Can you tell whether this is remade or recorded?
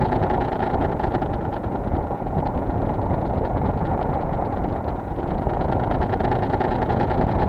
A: remade